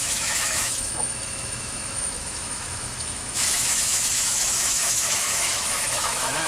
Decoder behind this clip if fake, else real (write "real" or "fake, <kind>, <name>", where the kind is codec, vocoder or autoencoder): fake, autoencoder, DAC-VAE